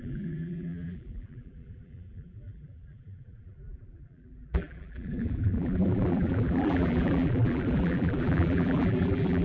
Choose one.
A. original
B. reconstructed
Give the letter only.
B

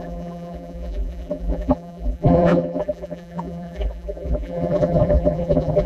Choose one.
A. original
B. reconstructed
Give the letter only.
B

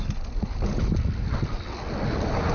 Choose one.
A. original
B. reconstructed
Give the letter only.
A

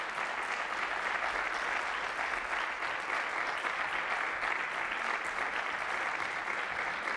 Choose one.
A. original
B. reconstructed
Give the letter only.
A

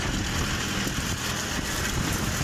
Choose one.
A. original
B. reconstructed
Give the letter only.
A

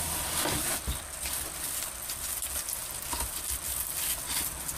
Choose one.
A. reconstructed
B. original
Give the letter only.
B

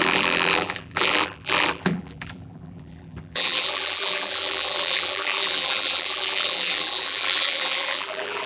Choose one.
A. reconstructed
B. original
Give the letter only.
A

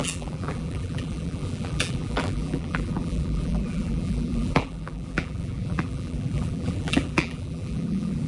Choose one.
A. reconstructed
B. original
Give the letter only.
A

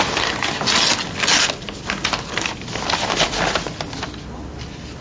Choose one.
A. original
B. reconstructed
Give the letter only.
A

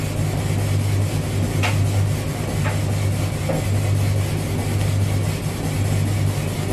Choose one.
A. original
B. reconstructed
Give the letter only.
A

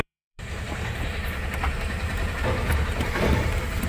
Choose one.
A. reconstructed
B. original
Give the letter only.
A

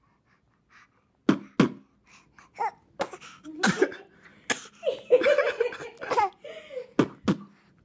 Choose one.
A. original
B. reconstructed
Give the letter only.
A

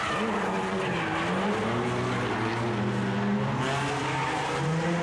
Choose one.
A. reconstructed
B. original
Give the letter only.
B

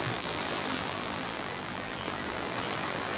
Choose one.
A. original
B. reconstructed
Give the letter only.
B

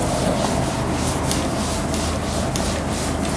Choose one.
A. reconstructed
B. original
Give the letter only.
B